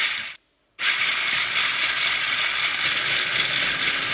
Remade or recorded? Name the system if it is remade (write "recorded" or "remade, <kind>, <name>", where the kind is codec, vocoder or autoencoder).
recorded